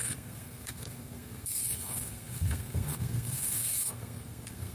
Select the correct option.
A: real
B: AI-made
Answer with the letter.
B